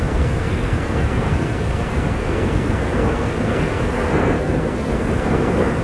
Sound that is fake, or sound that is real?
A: fake